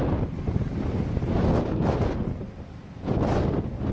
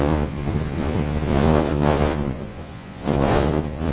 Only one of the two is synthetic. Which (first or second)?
second